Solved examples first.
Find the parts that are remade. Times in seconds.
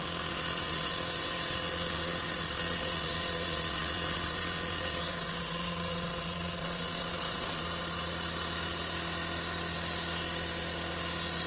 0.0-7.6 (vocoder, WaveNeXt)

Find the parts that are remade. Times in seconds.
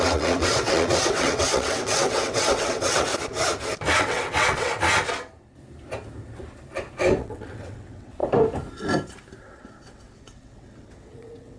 0.0-3.1 (vocoder, WaveNeXt); 4.0-4.7; 7.2-8.2; 9.4-11.6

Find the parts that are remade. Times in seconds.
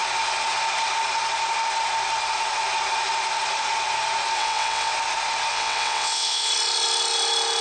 4.4-4.9 (vocoder, WaveNeXt); 5.5-6.5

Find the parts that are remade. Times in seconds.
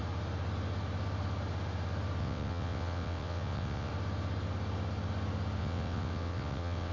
2.2-3.9 (vocoder, WaveNeXt); 5.6-6.9